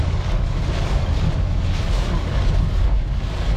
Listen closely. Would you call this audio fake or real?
fake